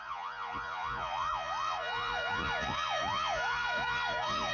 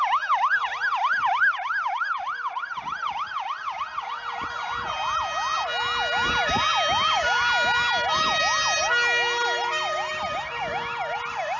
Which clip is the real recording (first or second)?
second